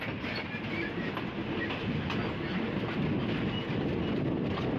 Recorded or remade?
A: recorded